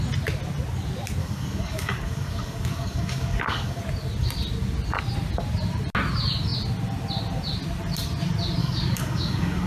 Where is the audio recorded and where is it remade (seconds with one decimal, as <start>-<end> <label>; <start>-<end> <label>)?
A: 0.0-1.2 recorded; 1.2-3.8 remade; 3.8-8.6 recorded; 8.6-9.7 remade